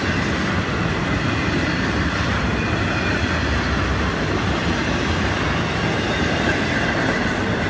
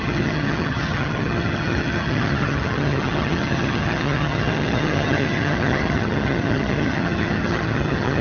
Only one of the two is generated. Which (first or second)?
second